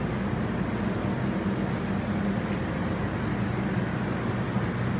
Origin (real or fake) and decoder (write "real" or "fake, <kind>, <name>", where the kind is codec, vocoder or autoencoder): real